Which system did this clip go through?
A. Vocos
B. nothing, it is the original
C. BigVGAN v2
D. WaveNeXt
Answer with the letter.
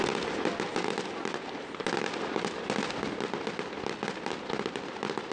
B